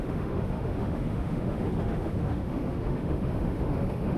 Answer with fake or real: fake